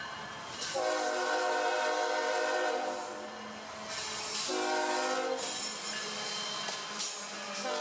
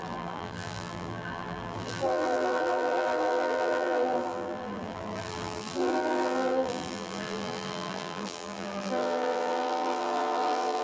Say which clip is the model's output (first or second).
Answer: second